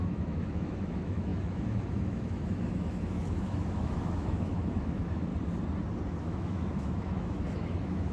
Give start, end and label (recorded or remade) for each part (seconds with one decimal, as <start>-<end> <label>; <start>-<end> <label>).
0.0-5.3 remade; 5.3-6.2 recorded; 6.2-8.1 remade